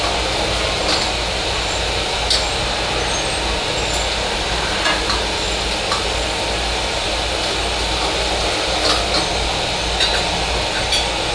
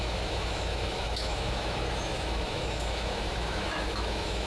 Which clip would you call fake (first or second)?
second